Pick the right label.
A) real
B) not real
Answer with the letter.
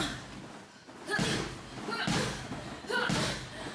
A